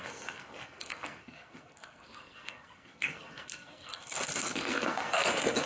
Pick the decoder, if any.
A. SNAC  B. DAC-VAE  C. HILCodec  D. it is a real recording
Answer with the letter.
A